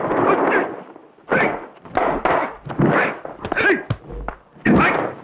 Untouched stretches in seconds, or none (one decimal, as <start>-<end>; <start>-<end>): 0.0-5.2